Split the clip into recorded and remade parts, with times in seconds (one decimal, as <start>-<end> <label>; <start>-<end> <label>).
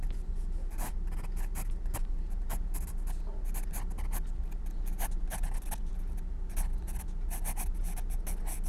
0.0-8.7 recorded